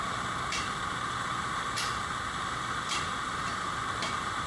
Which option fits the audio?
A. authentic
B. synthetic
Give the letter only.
B